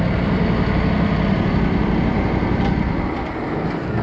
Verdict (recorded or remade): recorded